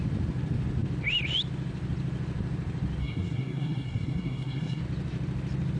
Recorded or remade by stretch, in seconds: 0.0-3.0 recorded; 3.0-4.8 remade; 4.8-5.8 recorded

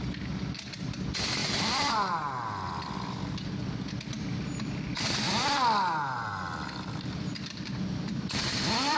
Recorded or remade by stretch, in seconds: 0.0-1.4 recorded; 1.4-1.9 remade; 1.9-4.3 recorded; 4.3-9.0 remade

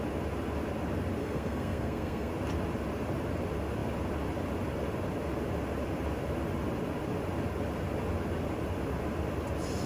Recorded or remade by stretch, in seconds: 0.0-1.2 recorded; 1.2-2.3 remade; 2.3-9.9 recorded